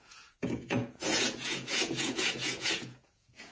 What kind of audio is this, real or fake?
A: fake